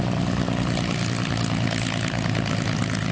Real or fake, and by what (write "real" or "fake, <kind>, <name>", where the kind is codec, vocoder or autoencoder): fake, vocoder, BigVGAN v2